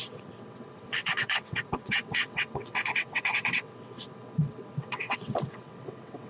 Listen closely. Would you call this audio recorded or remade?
remade